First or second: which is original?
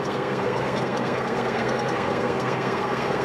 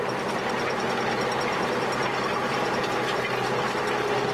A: second